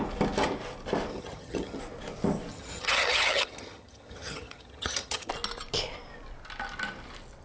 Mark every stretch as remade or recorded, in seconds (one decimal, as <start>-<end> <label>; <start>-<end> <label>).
0.0-1.1 recorded; 1.1-1.8 remade; 1.8-2.5 recorded; 2.5-5.3 remade; 5.3-7.4 recorded